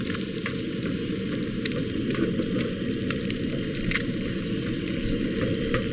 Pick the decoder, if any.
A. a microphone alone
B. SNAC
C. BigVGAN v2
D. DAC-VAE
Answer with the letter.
C